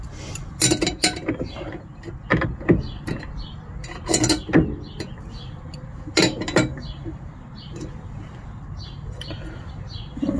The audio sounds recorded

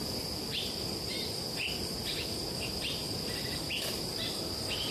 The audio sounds recorded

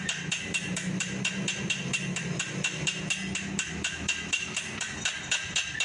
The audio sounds recorded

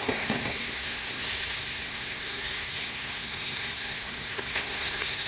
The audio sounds remade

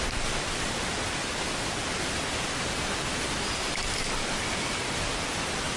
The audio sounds remade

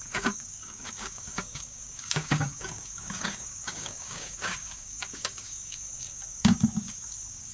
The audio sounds remade